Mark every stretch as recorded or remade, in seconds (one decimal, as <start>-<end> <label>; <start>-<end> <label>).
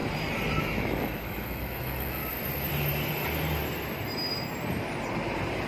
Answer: 0.0-0.6 recorded; 0.6-2.2 remade; 2.2-5.7 recorded